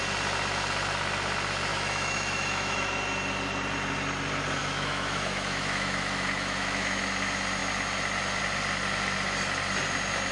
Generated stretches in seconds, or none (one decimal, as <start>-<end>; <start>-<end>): 1.7-2.9; 4.6-7.0